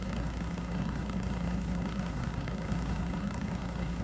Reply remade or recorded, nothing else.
remade